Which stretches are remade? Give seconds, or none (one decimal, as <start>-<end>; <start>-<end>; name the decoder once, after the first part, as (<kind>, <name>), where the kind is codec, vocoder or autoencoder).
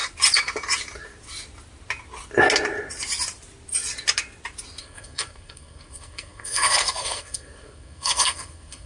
4.8-8.9 (codec, SNAC)